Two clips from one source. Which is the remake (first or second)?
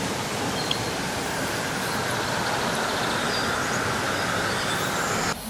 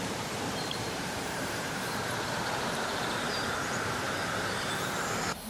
second